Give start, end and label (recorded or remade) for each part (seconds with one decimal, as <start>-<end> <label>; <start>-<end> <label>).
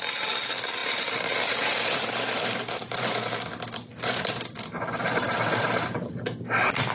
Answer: 0.0-0.8 recorded; 0.8-3.3 remade; 3.3-3.9 recorded; 3.9-6.1 remade; 6.1-6.9 recorded